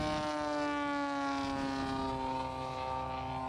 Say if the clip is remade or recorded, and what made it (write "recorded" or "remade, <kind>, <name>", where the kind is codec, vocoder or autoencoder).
recorded